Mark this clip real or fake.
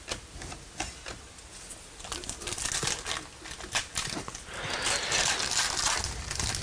real